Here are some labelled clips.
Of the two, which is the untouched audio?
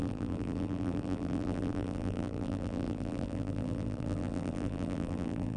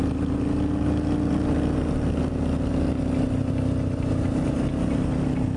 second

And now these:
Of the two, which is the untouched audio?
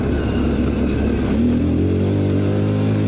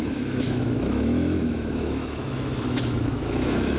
first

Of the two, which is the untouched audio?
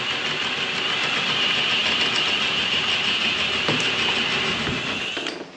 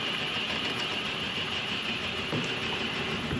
first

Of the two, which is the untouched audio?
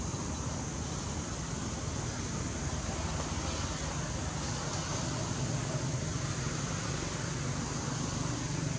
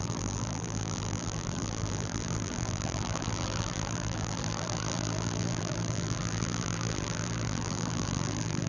first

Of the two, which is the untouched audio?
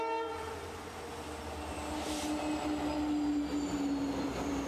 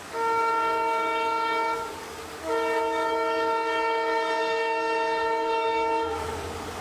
first